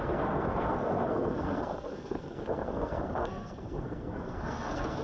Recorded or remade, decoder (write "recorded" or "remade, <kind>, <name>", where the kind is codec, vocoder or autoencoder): remade, codec, SNAC